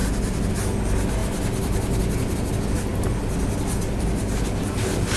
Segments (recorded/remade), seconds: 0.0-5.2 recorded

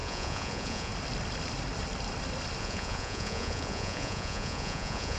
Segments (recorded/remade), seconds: 0.0-0.9 remade; 0.9-2.6 recorded; 2.6-5.2 remade

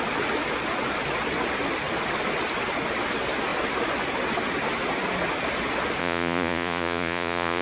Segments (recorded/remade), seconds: 0.0-6.0 recorded; 6.0-7.6 remade

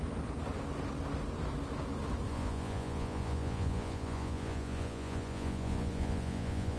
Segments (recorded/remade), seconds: 0.0-2.3 recorded; 2.3-6.8 remade

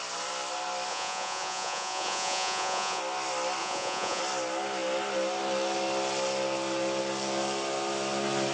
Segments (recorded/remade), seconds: 0.0-0.9 recorded; 0.9-3.0 remade; 3.0-3.6 recorded; 3.6-4.2 remade; 4.2-8.5 recorded

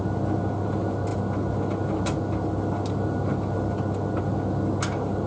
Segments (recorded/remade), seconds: 0.0-5.3 recorded

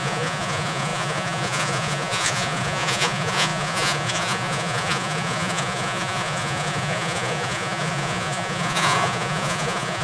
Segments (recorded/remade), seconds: 0.0-10.0 remade